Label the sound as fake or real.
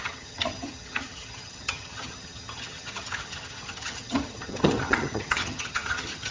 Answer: fake